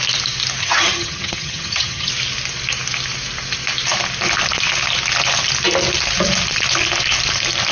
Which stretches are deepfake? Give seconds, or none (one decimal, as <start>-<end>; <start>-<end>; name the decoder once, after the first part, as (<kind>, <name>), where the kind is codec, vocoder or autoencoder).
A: 0.6-2.1 (vocoder, HiFi-GAN)